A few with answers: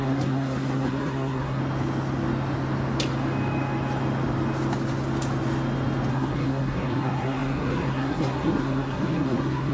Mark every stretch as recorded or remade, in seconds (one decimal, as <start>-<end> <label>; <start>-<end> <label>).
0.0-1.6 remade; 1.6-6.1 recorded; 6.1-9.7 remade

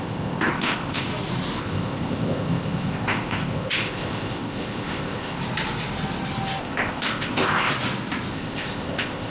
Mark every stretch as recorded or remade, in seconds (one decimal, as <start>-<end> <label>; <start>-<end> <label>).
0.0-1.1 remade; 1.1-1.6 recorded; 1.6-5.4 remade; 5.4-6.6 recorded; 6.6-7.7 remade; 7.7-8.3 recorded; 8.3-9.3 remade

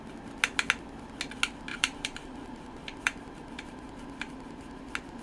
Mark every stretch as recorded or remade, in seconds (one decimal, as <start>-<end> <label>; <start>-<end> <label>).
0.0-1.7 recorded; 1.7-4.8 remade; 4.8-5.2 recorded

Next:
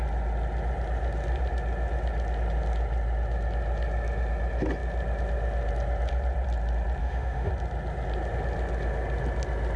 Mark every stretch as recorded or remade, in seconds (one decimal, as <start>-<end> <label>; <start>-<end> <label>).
0.0-7.0 recorded; 7.0-7.5 remade; 7.5-9.8 recorded